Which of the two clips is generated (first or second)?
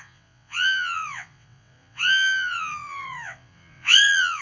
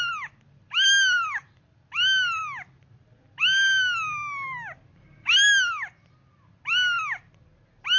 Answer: first